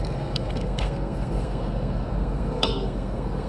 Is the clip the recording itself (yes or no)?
no